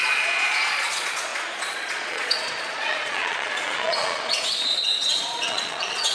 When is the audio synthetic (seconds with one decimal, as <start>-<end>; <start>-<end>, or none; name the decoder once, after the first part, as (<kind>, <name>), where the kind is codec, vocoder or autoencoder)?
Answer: 0.0-6.1 (vocoder, Vocos)